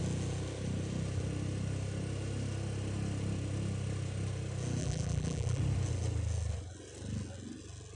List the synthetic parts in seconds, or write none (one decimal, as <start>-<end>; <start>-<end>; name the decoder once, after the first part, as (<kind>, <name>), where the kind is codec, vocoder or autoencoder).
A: 4.8-5.6 (vocoder, BigVGAN v2)